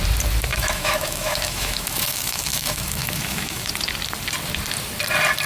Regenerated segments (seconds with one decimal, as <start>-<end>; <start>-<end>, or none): 0.5-3.7